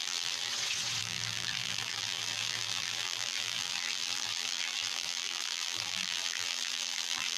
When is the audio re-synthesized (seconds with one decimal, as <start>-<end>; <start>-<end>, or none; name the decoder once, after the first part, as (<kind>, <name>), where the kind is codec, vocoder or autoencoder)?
0.0-0.5 (vocoder, BigVGAN v2); 1.0-7.4